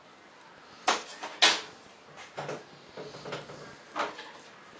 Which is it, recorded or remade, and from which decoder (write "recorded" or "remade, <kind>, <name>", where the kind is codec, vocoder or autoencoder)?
recorded